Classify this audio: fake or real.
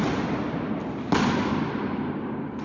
real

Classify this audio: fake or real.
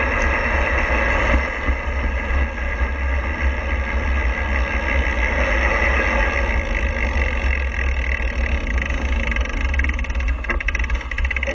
real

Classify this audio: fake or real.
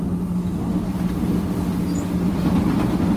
real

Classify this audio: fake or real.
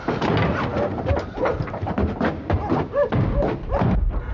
real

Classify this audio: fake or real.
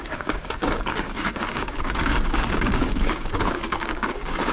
fake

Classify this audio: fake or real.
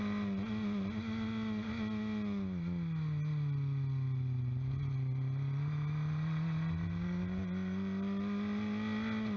real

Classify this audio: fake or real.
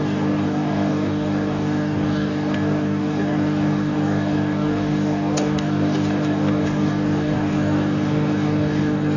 fake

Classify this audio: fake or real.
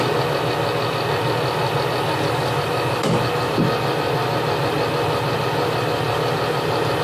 real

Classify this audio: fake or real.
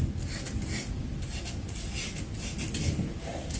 real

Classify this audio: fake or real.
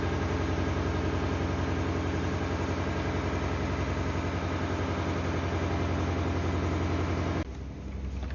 real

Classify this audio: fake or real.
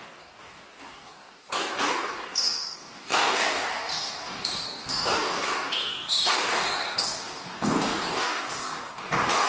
fake